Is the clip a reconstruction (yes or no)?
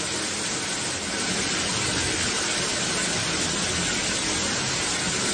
no